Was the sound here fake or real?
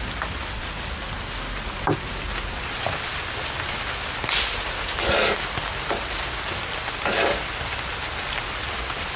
real